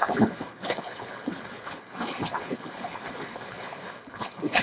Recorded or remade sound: remade